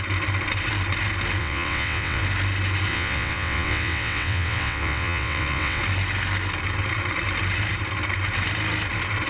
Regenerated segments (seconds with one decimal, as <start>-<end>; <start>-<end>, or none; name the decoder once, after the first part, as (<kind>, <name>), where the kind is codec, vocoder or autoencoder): 1.4-2.2 (vocoder, WaveNeXt); 2.9-5.8